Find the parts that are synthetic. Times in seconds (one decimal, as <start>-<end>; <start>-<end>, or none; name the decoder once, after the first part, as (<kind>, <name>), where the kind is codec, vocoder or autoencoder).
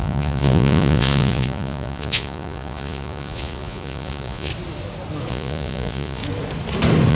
0.0-4.5 (vocoder, Vocos); 5.3-6.2